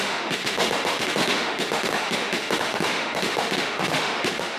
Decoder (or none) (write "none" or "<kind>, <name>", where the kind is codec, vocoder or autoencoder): autoencoder, DAC-VAE